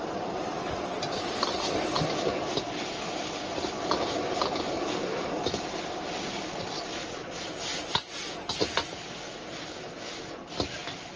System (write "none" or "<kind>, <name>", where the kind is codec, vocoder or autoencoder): none